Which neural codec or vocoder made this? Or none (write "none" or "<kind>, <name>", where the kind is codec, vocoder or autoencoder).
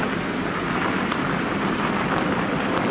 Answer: none